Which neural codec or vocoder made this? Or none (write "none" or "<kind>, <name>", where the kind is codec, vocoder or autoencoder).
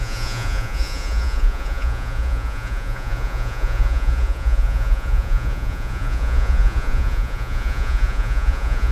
vocoder, Vocos